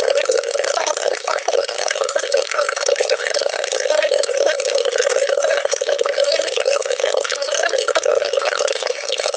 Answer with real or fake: fake